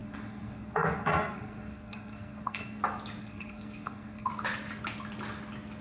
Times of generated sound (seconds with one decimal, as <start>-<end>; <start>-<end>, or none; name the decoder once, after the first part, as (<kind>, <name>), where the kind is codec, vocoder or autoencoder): 0.0-2.8 (codec, SNAC); 3.2-4.3